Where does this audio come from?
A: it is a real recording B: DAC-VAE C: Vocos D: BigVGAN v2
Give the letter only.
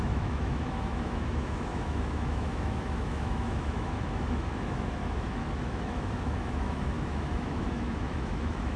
B